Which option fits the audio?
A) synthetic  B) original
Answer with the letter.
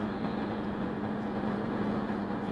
A